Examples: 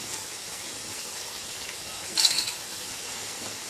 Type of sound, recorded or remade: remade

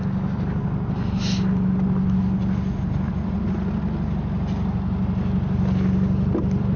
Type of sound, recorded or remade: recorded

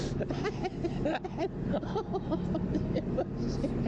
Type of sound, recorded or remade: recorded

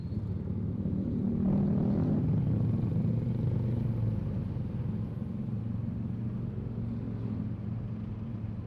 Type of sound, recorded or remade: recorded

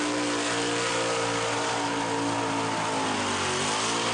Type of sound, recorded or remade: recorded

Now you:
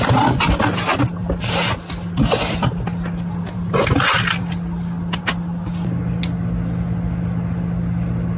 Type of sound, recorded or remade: recorded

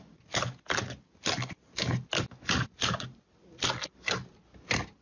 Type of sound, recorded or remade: recorded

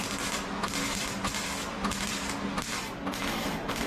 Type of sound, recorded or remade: recorded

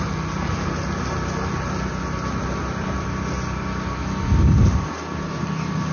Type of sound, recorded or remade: recorded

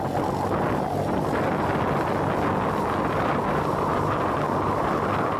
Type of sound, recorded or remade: recorded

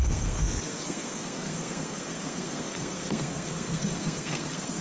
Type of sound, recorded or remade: remade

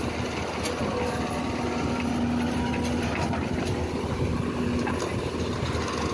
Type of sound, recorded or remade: recorded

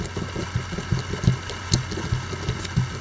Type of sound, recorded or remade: recorded